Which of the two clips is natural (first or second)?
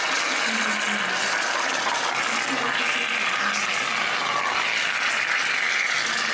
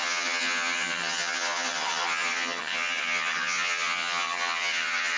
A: first